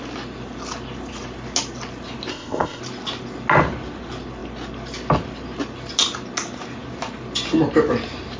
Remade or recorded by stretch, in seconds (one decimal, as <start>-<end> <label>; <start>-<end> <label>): 0.0-2.3 recorded; 2.3-2.8 remade; 2.8-8.4 recorded